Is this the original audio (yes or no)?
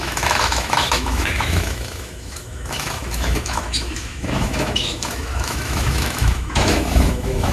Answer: no